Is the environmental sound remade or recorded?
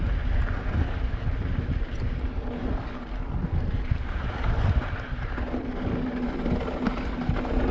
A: recorded